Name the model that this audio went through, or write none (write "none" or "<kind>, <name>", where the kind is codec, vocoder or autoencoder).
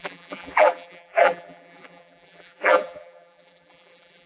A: vocoder, BigVGAN v2